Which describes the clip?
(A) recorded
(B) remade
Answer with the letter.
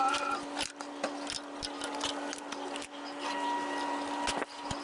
A